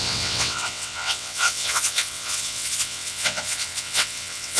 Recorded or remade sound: remade